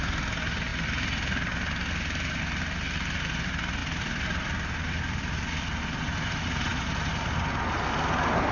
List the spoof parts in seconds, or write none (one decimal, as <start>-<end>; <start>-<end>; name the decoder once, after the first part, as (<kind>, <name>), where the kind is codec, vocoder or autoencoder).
none